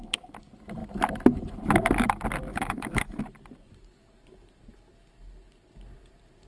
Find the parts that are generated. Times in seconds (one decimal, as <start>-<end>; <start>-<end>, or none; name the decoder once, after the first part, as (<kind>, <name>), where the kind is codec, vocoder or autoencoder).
2.5-3.2 (autoencoder, DAC-VAE)